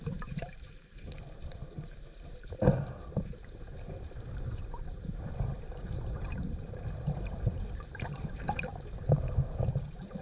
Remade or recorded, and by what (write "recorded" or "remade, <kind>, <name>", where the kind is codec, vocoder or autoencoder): remade, vocoder, BigVGAN v2